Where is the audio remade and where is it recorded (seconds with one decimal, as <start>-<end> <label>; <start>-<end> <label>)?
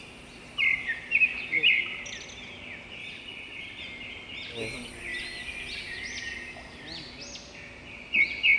0.0-3.0 recorded; 3.0-3.8 remade; 3.8-8.6 recorded